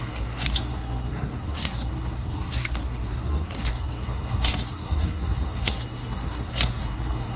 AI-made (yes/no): yes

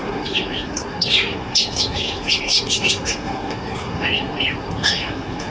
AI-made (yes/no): yes